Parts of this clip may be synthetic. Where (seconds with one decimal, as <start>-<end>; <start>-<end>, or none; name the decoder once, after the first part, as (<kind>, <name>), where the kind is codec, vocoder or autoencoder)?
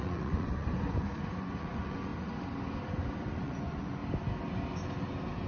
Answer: 0.0-2.1 (vocoder, Vocos); 3.4-4.0